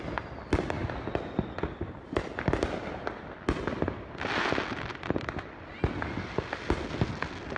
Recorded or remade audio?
recorded